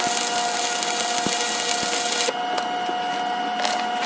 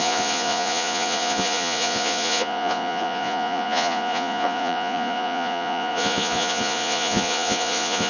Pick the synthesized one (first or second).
second